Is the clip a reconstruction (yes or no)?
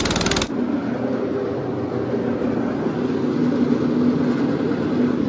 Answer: no